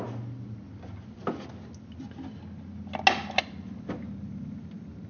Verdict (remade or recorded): recorded